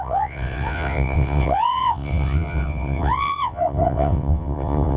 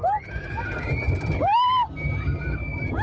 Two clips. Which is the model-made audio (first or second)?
first